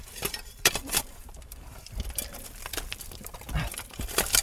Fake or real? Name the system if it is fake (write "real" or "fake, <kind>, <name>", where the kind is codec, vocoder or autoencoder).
fake, vocoder, BigVGAN v2